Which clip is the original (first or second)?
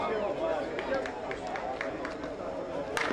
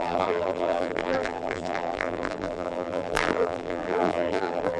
first